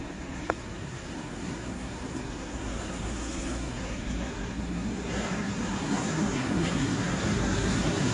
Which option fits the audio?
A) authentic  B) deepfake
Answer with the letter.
B